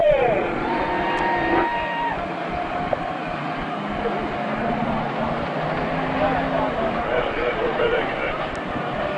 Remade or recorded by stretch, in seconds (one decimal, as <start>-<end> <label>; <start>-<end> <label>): 0.0-0.8 remade; 0.8-4.6 recorded; 4.6-5.1 remade; 5.1-7.1 recorded; 7.1-8.4 remade; 8.4-9.2 recorded